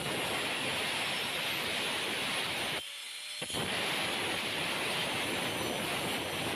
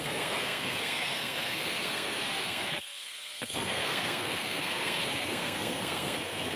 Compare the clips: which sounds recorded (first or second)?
first